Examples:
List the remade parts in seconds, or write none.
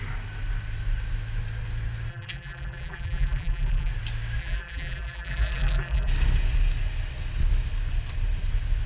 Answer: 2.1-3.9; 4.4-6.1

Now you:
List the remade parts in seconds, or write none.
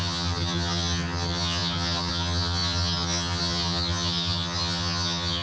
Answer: 0.0-5.4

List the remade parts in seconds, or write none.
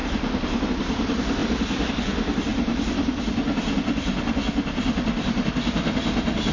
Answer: 0.0-0.7; 1.4-1.9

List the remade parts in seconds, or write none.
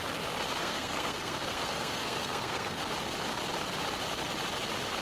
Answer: 0.6-2.8